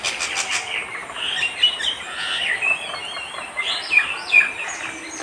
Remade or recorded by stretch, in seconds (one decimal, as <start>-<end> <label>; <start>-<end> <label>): 0.0-5.2 recorded